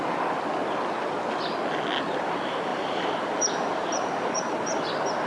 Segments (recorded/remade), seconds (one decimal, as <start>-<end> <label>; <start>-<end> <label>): 0.0-2.7 recorded; 2.7-4.8 remade; 4.8-5.3 recorded